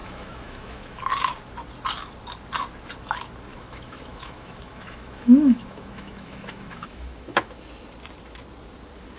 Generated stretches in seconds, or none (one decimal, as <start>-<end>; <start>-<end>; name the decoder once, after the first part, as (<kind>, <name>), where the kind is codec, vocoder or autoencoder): 0.0-1.0 (autoencoder, DAC-VAE); 3.5-7.6